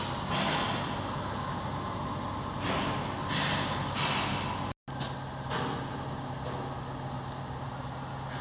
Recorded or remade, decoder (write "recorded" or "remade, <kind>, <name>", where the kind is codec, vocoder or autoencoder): recorded